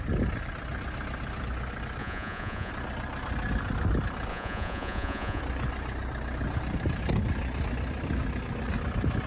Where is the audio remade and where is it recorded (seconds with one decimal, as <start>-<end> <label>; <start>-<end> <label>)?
0.0-2.0 recorded; 2.0-2.7 remade; 2.7-4.3 recorded; 4.3-5.4 remade; 5.4-9.3 recorded